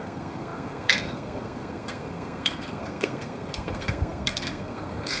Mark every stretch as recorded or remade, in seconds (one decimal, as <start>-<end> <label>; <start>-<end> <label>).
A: 0.0-5.2 remade